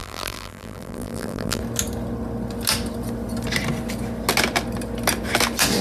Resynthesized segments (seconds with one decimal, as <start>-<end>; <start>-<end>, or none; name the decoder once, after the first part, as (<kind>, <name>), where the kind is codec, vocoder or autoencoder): 0.0-1.6 (vocoder, BigVGAN v2)